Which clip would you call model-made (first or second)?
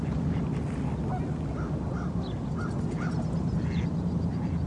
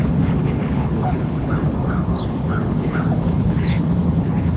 second